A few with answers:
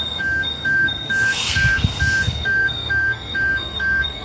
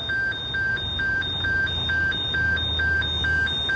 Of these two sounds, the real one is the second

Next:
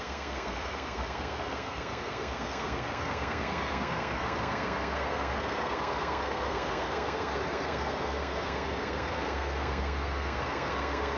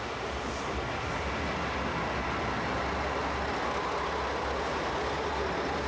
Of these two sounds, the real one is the second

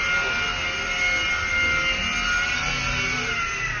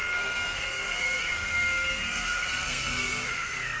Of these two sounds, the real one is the first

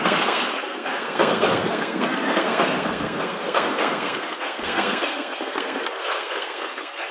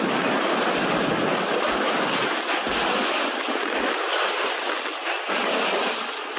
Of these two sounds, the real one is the second